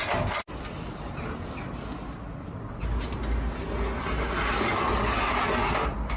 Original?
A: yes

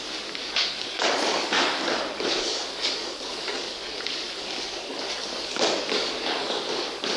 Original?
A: no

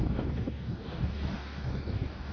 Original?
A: no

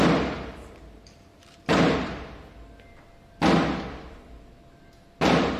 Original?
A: yes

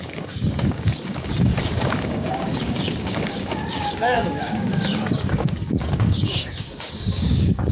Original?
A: no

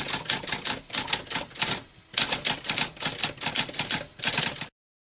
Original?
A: yes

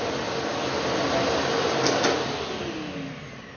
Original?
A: yes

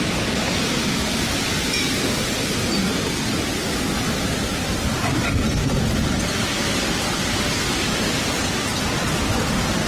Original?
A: yes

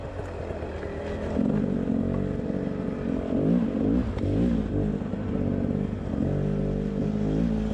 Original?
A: yes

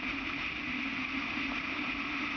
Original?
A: yes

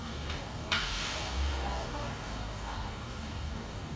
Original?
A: no